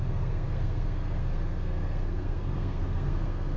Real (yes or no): no